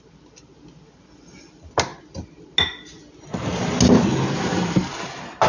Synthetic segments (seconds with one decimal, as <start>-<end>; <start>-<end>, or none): none